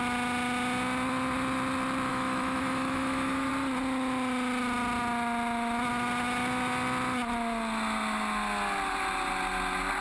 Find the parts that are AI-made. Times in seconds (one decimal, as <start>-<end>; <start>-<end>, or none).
2.1-3.5